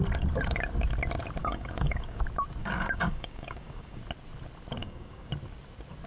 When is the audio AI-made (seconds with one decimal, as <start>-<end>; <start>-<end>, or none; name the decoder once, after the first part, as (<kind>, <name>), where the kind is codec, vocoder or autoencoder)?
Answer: 1.4-2.2 (codec, DAC); 2.6-4.0; 4.8-5.3